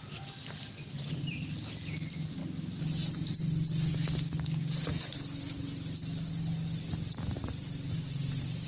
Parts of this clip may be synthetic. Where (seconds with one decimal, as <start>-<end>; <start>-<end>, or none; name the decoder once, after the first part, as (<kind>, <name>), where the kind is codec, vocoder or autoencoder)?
none